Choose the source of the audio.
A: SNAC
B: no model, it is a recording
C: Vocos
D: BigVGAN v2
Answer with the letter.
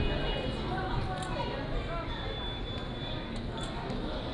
B